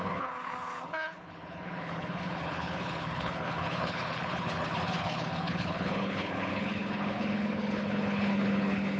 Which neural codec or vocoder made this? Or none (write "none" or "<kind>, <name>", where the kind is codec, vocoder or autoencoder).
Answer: codec, HILCodec